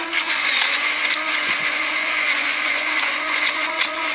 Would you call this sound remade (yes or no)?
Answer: yes